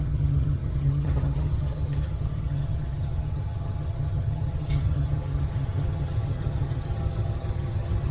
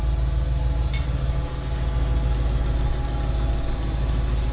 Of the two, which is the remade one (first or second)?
first